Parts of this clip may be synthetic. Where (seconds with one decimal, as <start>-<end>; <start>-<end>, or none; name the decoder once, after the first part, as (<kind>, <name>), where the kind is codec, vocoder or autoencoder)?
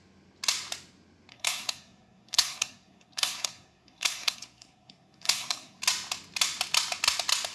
1.3-5.8 (codec, SNAC)